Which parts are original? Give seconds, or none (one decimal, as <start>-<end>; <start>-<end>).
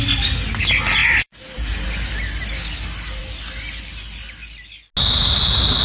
0.0-1.0; 1.8-5.8